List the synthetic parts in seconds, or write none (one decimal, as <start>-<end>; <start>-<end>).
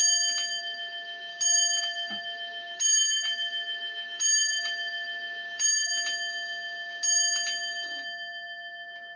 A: 0.6-1.3; 1.8-5.9